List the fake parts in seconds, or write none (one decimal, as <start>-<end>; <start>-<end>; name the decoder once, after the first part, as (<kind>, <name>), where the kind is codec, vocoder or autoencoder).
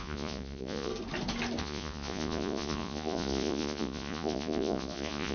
0.0-0.9 (vocoder, Vocos); 1.6-5.3